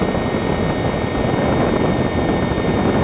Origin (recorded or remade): recorded